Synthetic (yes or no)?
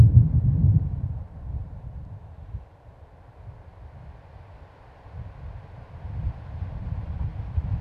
yes